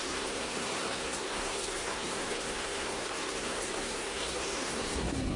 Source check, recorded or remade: remade